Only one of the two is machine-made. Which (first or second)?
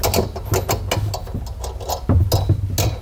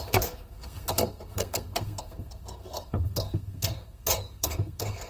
second